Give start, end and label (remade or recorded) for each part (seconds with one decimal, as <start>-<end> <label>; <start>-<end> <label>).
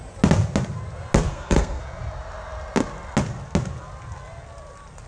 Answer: 0.0-1.3 recorded; 1.3-1.8 remade; 1.8-5.1 recorded